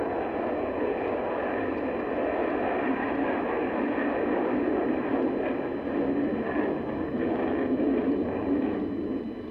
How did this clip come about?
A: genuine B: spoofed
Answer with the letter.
B